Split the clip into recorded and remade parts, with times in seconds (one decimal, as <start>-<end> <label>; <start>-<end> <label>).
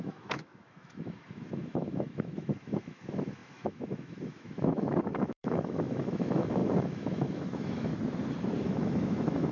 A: 0.0-7.9 remade; 7.9-8.6 recorded; 8.6-9.5 remade